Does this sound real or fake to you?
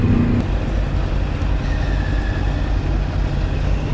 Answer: real